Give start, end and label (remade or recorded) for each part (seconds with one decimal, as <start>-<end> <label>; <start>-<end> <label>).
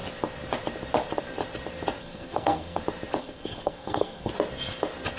0.0-2.0 recorded; 2.0-2.8 remade; 2.8-3.2 recorded; 3.2-4.3 remade; 4.3-5.2 recorded